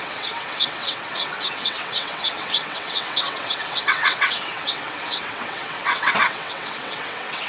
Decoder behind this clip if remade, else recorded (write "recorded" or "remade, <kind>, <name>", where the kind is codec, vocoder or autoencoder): remade, vocoder, WaveNeXt